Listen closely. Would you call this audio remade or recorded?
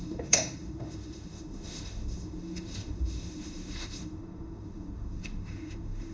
remade